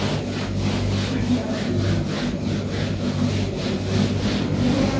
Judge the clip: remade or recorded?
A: recorded